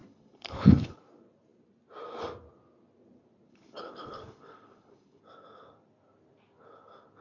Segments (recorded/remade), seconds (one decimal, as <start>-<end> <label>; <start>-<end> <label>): 0.0-1.0 remade; 1.0-3.5 recorded; 3.5-5.2 remade; 5.2-7.2 recorded